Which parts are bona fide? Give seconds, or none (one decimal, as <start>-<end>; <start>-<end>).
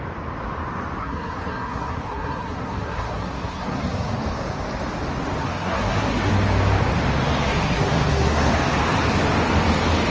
0.0-1.0; 4.2-5.4; 6.3-7.5; 8.5-10.1